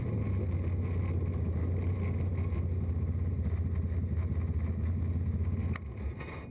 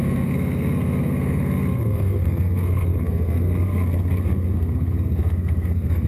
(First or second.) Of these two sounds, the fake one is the second